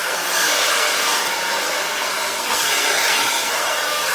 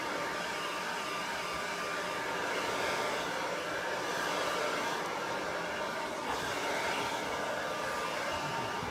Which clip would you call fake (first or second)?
first